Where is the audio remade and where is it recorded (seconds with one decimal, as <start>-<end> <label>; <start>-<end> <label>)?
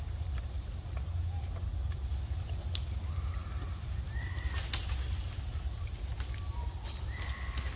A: 0.0-7.8 recorded